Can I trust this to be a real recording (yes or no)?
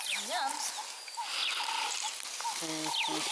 yes